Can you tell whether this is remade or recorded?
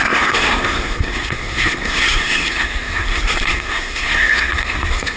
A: remade